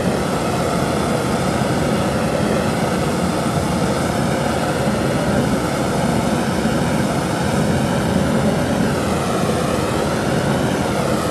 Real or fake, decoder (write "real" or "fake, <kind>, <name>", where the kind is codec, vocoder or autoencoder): real